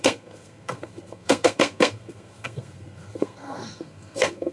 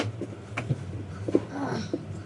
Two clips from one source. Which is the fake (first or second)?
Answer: first